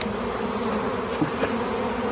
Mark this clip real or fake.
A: real